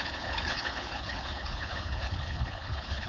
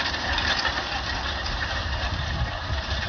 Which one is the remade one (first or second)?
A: first